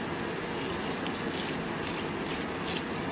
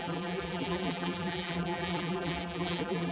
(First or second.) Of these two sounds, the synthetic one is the second